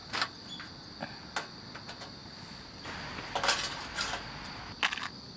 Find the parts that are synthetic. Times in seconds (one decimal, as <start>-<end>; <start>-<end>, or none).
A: none